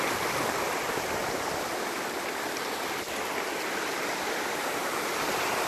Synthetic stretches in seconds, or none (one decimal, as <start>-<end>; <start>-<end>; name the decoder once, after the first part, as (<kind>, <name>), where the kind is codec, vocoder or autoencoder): none